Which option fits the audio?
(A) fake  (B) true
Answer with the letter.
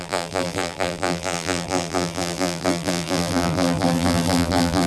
A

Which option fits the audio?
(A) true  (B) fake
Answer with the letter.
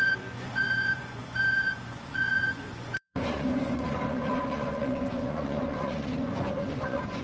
B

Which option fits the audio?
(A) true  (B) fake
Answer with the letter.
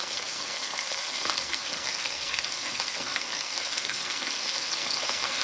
B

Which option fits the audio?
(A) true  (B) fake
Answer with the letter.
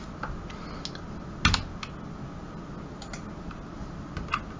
A